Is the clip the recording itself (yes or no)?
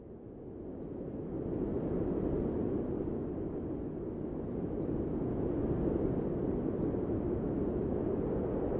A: yes